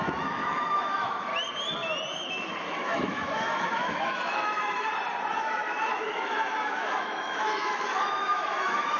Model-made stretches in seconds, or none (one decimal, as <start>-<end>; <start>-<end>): 0.0-1.3; 2.3-4.9; 5.4-9.0